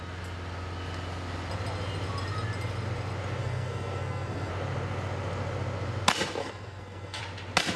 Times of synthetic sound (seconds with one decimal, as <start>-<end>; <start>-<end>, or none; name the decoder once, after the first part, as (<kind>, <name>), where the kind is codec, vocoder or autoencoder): 3.4-4.5 (codec, SNAC); 6.4-7.2